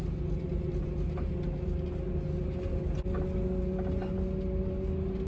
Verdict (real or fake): real